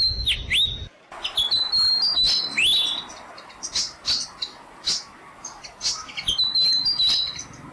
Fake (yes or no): no